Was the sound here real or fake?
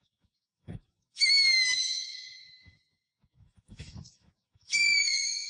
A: fake